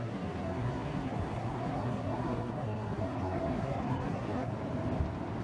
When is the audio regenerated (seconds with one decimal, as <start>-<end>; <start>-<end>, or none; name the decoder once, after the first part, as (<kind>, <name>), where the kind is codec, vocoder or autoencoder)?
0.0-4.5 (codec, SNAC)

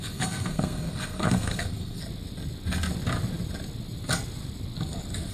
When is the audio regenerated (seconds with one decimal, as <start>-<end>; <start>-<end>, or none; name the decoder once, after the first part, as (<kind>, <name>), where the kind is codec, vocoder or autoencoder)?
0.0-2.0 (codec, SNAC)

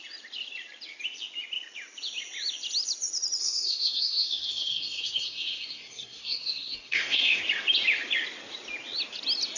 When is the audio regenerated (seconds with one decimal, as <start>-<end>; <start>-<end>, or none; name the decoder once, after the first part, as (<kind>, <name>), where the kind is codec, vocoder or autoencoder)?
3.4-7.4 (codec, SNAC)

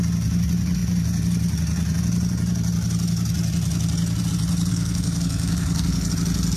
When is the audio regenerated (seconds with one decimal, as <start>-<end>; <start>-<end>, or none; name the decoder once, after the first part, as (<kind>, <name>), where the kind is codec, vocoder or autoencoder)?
4.7-6.1 (codec, SNAC)